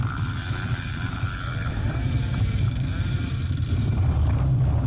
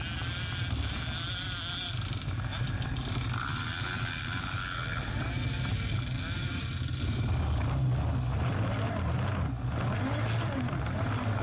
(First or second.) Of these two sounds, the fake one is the first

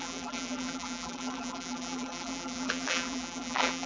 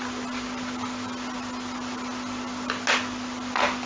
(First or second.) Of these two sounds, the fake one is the first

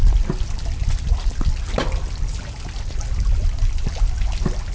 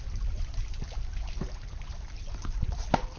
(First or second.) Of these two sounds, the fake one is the second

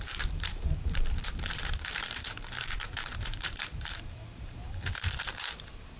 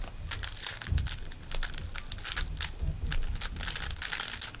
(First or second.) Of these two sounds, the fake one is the first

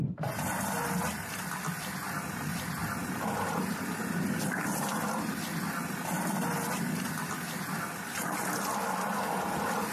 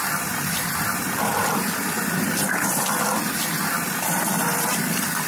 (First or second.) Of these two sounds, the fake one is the second